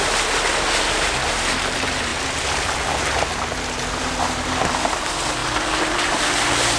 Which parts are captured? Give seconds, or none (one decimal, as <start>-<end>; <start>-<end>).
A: 0.0-2.1; 3.2-5.4; 6.1-6.8